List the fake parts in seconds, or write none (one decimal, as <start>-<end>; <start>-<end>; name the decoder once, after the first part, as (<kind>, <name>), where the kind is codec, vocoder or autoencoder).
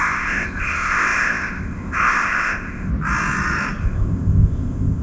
0.0-2.9 (codec, ZipCodec); 3.8-5.0